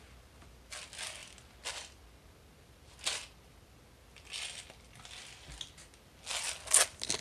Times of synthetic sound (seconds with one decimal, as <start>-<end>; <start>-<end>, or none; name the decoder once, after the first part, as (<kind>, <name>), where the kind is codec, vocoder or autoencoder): none

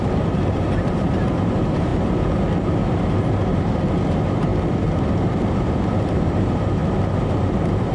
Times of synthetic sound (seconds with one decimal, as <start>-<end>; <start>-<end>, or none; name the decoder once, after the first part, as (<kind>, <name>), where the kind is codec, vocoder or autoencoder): 0.0-1.9 (vocoder, BigVGAN v2); 3.0-4.5; 5.5-6.8; 7.4-7.9

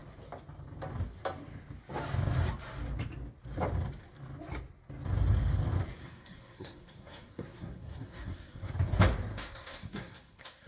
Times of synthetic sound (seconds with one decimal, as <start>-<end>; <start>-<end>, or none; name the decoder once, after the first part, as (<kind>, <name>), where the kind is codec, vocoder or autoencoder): 6.0-8.7 (codec, SNAC); 9.3-10.7

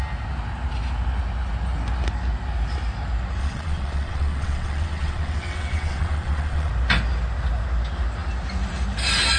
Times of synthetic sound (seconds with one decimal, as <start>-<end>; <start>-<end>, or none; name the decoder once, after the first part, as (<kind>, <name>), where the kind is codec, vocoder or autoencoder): 3.4-6.7 (vocoder, WaveNeXt)

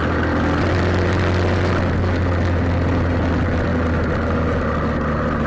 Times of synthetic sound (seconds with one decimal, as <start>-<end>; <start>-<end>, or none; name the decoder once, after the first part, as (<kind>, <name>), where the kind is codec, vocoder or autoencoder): none